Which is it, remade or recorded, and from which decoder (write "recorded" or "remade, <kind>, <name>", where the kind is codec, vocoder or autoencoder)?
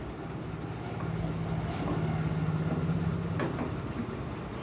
recorded